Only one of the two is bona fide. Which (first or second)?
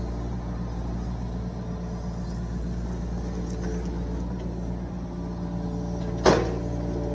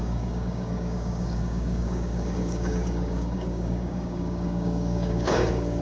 first